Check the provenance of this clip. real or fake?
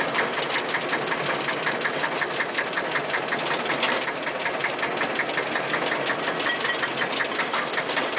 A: real